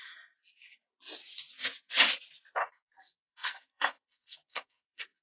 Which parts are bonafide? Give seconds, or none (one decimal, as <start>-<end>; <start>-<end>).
0.0-2.6